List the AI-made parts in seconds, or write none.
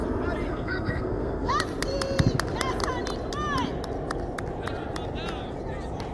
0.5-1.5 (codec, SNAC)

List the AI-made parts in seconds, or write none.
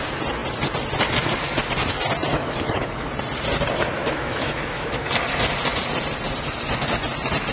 2.3-3.1 (autoencoder, DAC-VAE); 4.0-5.1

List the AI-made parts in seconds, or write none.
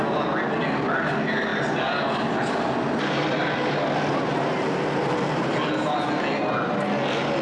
none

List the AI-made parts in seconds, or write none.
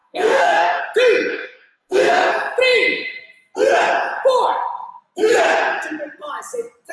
0.0-0.8 (codec, DAC); 1.3-2.3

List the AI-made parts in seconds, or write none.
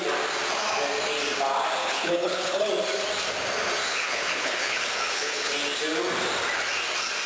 1.8-2.7 (codec, HILCodec); 3.9-5.5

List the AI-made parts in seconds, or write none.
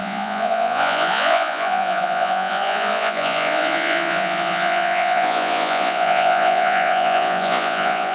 0.0-8.1 (vocoder, Vocos)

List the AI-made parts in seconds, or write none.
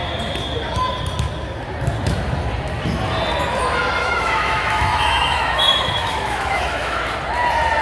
4.0-7.0 (autoencoder, DAC-VAE)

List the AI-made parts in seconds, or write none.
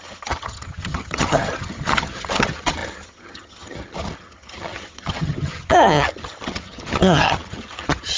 0.0-8.2 (vocoder, HiFi-GAN)